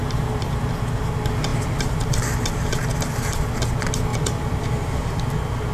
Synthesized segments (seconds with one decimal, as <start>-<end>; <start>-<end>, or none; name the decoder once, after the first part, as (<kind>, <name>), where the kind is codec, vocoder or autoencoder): 0.0-0.7 (vocoder, BigVGAN v2); 4.1-5.3